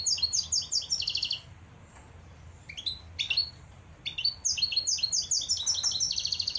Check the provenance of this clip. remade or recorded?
recorded